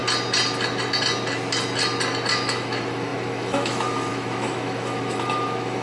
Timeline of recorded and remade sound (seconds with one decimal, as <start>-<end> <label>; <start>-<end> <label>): 0.0-2.3 recorded; 2.3-5.8 remade